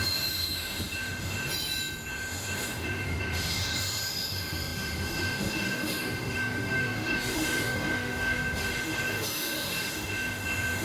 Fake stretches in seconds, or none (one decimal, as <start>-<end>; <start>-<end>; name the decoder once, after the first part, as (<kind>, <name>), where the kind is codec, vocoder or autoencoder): 0.0-1.5 (autoencoder, DAC-VAE); 2.1-10.8